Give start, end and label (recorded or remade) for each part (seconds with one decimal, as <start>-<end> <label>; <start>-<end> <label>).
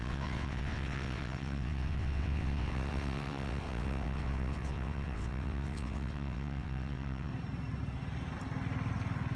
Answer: 0.0-7.3 remade; 7.3-9.4 recorded